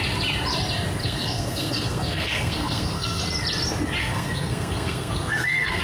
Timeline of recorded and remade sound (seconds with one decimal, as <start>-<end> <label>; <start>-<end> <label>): 0.0-1.0 recorded; 1.0-3.2 remade; 3.2-4.0 recorded; 4.0-5.8 remade